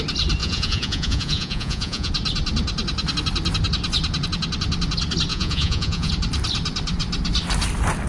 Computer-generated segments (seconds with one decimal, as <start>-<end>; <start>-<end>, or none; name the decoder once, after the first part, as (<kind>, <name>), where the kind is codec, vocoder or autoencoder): 0.4-2.1 (vocoder, Vocos); 5.3-6.1